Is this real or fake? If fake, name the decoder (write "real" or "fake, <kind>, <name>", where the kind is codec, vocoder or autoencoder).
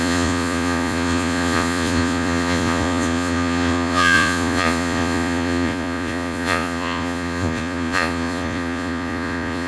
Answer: fake, vocoder, Vocos